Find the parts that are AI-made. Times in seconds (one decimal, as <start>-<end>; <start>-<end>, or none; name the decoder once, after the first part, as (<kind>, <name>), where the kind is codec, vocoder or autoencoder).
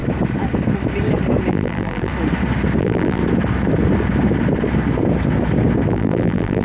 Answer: 1.5-2.1 (vocoder, BigVGAN v2); 2.8-3.2; 5.9-6.6